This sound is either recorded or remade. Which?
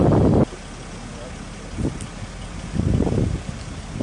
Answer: recorded